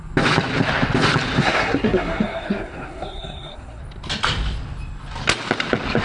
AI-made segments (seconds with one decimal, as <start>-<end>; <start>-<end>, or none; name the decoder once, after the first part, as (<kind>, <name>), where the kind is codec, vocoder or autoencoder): 1.4-3.8 (codec, SNAC)